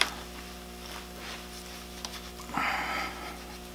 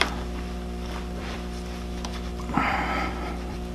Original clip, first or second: first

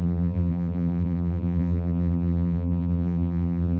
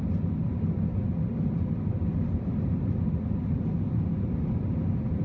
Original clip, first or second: second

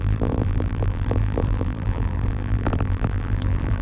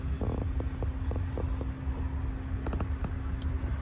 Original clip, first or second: second